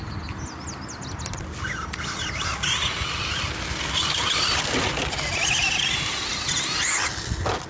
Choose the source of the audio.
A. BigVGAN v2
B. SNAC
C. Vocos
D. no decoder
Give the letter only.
D